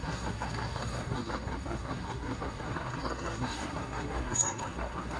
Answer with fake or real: fake